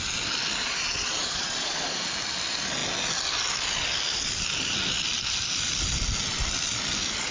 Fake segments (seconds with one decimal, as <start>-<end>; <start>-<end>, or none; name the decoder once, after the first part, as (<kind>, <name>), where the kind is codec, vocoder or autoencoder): 0.6-2.0 (vocoder, Vocos)

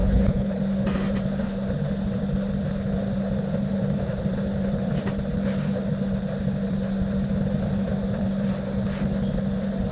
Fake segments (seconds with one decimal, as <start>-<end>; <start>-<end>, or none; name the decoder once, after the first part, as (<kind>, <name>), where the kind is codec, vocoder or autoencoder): 0.0-0.6 (codec, HILCodec)

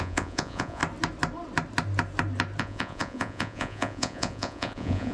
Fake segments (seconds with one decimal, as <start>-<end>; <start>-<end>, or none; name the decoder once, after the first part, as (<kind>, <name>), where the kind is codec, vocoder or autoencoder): 0.0-0.8 (vocoder, Vocos); 2.6-5.1

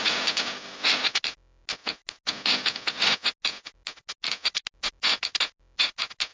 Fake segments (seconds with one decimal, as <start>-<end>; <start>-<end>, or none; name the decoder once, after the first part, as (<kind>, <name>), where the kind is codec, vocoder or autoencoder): none

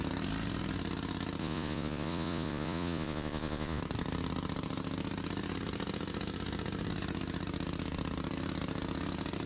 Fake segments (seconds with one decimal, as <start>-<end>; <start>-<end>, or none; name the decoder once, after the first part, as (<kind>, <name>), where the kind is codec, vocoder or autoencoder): 1.4-3.8 (vocoder, Vocos)